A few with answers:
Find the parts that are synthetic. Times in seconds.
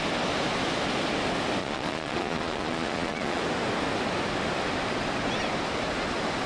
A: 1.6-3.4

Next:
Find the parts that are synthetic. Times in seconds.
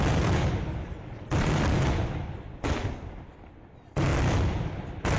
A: none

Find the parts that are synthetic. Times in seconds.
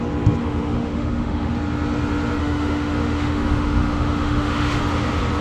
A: 0.4-1.5; 2.4-4.8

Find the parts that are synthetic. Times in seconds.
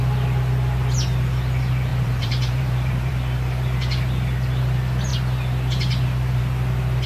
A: 1.9-3.1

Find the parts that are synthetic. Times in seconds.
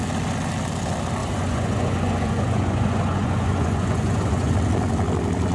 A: 1.2-4.5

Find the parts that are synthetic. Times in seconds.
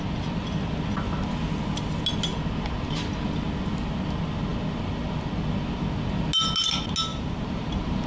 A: 7.1-8.1